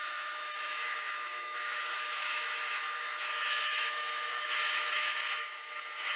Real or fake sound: fake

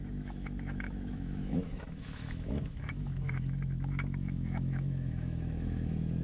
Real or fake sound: fake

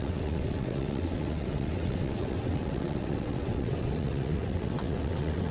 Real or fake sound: fake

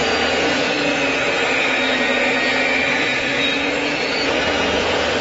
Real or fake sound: fake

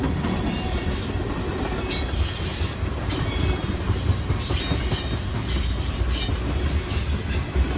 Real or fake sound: real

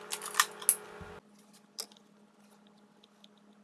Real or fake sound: real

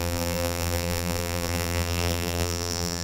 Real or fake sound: fake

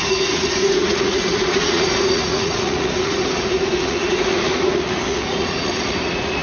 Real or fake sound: fake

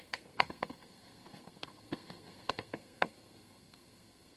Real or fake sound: fake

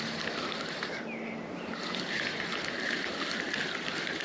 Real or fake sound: real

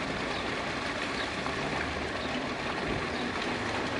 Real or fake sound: real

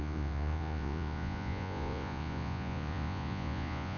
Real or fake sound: fake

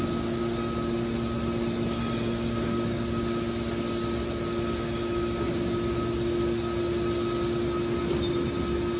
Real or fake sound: real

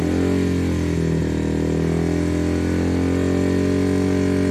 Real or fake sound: real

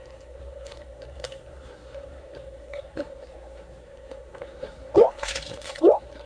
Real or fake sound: fake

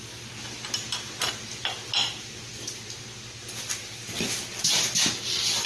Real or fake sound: real